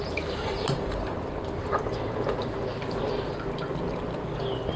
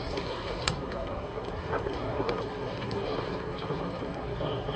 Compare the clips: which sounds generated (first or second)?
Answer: second